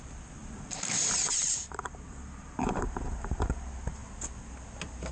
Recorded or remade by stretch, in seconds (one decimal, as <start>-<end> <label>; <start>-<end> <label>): 0.0-0.4 recorded; 0.4-3.5 remade; 3.5-5.1 recorded